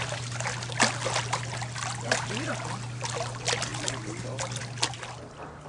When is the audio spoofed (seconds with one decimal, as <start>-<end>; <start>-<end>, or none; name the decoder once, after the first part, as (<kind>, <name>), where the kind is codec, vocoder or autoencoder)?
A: none